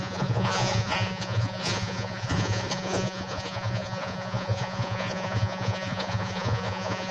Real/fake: fake